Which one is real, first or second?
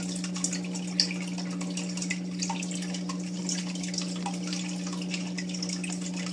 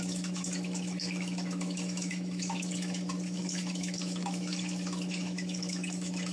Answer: first